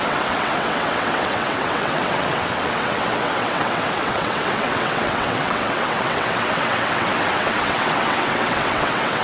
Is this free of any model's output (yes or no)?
no